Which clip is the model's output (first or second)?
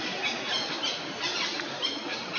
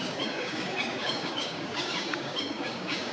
second